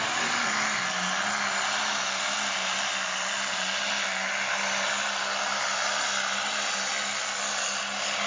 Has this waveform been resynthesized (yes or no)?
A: no